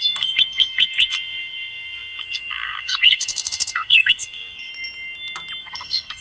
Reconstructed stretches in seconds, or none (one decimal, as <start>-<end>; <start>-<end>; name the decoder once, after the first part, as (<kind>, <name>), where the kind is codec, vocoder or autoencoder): 0.0-4.7 (codec, SNAC); 5.6-6.2